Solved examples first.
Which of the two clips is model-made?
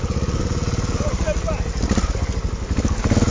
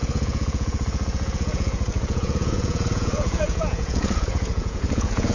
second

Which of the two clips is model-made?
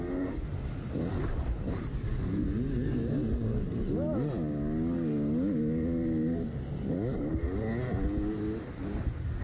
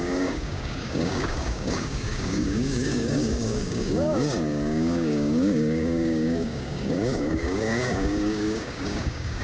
second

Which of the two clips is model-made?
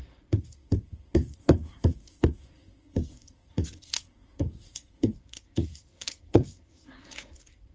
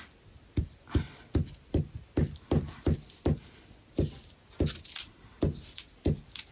first